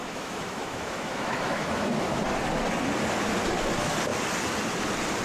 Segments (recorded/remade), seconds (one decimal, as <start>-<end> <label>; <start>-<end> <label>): 0.0-2.2 remade; 2.2-5.2 recorded